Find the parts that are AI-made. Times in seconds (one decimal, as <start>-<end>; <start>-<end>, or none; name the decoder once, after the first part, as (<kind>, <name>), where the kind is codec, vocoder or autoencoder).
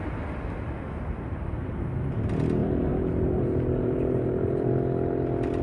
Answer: 2.6-4.7 (vocoder, BigVGAN v2)